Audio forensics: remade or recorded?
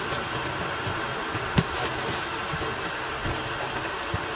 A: recorded